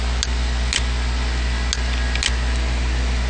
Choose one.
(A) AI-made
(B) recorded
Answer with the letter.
B